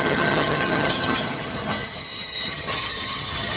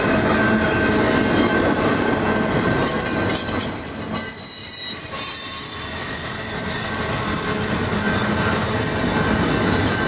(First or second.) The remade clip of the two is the first